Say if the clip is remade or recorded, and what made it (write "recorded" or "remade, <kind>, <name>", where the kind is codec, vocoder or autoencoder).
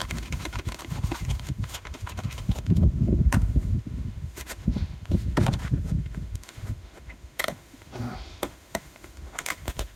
remade, autoencoder, DAC-VAE